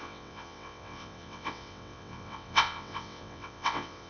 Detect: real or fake fake